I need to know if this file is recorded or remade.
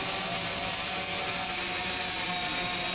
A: recorded